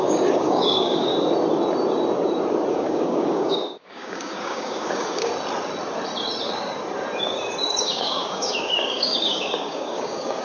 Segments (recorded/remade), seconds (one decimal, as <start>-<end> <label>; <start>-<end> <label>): 0.0-1.1 remade; 1.1-2.7 recorded; 2.7-5.3 remade; 5.3-7.8 recorded; 7.8-10.4 remade